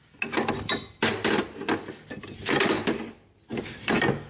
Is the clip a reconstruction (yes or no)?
no